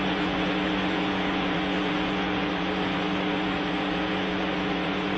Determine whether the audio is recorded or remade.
remade